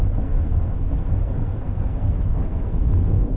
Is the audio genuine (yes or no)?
no